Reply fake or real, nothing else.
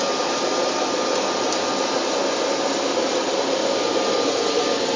real